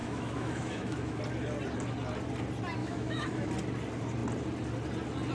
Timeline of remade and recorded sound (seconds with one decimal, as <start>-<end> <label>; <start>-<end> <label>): 0.0-1.2 remade; 1.2-2.8 recorded; 2.8-3.5 remade; 3.5-5.3 recorded